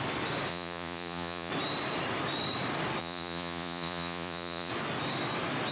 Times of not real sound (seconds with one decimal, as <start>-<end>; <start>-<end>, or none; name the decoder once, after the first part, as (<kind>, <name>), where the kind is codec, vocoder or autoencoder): 0.5-1.5 (vocoder, Vocos); 3.0-4.7